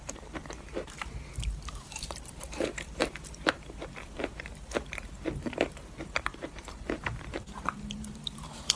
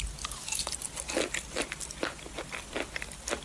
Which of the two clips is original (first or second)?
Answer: second